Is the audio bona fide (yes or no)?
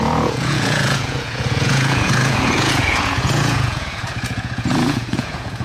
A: no